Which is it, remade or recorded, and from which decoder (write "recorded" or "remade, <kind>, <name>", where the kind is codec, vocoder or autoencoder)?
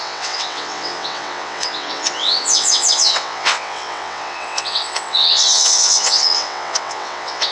remade, vocoder, WaveNeXt